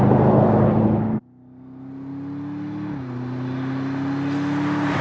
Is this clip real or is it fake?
real